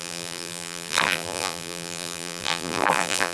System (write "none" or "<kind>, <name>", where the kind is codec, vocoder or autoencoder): vocoder, BigVGAN v2